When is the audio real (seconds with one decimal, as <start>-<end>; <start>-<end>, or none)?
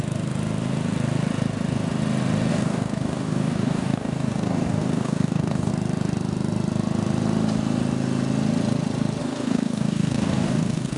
0.0-2.5; 5.7-9.2